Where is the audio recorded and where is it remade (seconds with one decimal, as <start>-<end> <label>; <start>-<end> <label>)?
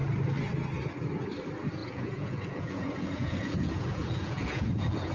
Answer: 0.0-1.8 recorded; 1.8-5.1 remade